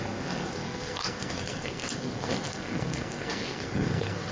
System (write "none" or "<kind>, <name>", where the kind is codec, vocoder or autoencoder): codec, SNAC